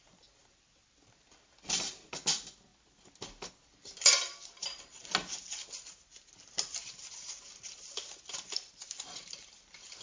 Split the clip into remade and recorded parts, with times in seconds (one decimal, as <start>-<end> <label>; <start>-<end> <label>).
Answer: 0.0-10.0 recorded